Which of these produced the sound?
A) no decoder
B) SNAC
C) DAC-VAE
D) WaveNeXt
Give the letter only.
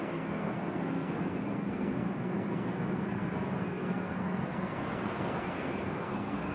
B